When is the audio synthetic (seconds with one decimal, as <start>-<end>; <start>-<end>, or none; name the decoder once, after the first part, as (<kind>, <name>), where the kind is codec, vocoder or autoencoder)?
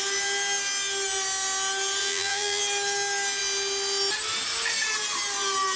2.0-2.6 (vocoder, BigVGAN v2)